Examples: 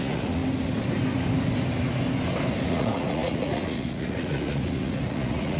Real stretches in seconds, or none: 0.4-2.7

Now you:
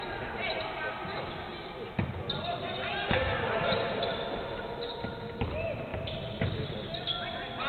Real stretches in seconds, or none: 0.0-5.9; 6.7-7.7

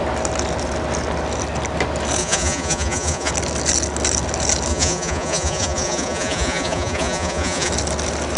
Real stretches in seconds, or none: 0.0-2.2; 3.3-4.7; 7.7-8.4

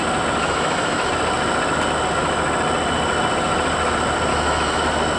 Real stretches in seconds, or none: 0.0-0.4; 1.1-4.3; 4.8-5.2

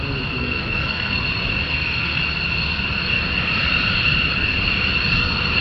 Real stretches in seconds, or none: 0.0-0.4; 1.2-1.7; 2.2-5.6

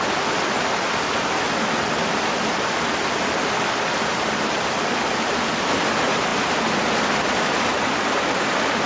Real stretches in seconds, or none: 0.0-8.9

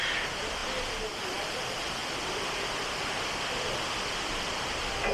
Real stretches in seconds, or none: 0.6-1.1; 2.0-4.4